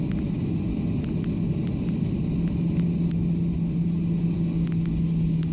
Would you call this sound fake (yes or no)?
no